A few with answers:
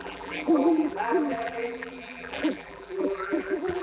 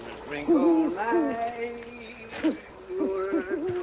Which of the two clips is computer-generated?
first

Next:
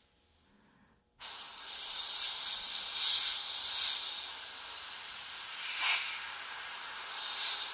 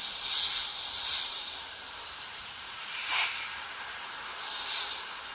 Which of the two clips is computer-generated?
second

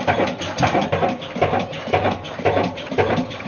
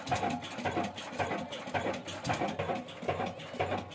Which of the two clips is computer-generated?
first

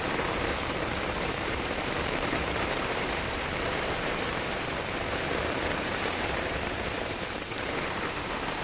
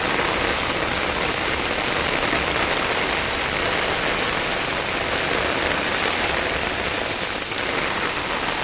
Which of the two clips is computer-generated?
first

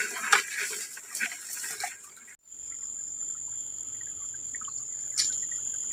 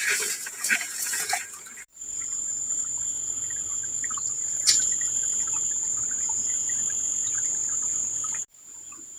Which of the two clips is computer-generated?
second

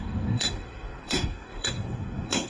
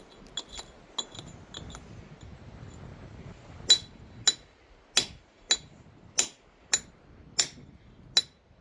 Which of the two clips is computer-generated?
first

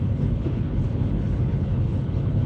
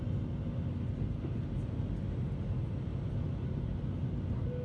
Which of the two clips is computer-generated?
first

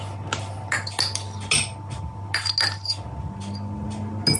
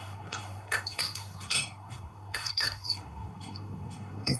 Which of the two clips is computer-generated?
second